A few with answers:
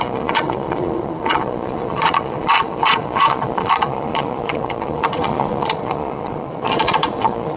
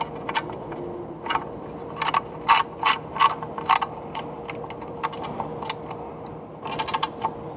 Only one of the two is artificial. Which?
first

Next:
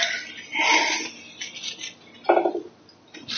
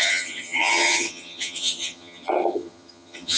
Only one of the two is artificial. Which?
second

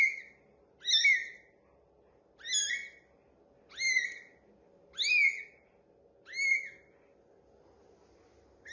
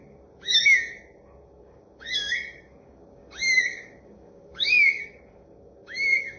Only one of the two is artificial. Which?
second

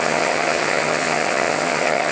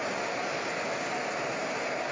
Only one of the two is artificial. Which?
first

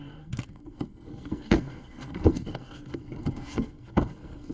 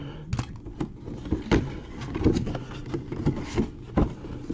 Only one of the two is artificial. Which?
first